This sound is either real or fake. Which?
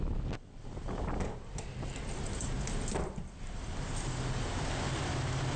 real